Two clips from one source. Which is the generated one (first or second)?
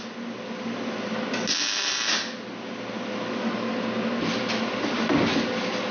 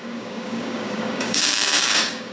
second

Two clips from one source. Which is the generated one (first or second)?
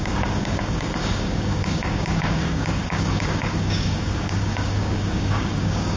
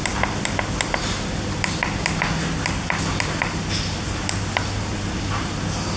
first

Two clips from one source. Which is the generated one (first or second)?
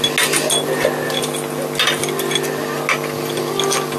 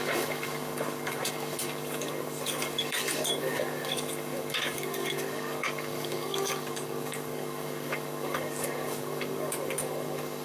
second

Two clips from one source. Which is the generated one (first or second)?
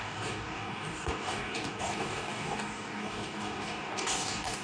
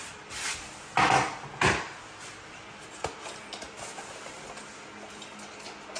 first